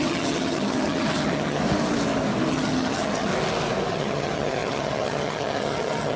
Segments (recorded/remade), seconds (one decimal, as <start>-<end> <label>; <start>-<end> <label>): 0.0-1.6 remade; 1.6-2.5 recorded; 2.5-3.3 remade; 3.3-3.9 recorded; 3.9-6.2 remade